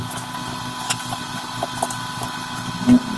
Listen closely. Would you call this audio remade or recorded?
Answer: recorded